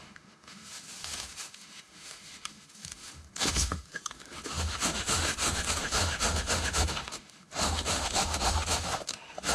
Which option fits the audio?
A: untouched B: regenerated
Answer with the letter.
B